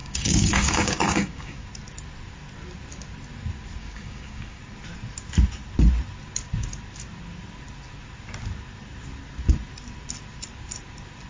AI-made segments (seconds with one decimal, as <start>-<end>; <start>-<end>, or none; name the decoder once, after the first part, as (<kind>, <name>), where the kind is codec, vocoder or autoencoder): 0.0-1.7 (codec, DAC); 3.8-4.6